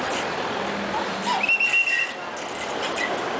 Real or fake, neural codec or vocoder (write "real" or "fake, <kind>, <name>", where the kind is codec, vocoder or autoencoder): real